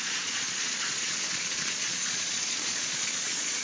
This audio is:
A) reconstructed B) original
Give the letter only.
A